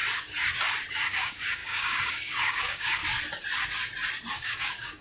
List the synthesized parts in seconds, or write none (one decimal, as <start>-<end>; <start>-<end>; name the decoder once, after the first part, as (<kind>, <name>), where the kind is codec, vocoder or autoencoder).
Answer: 0.9-3.0 (codec, DAC); 4.3-5.0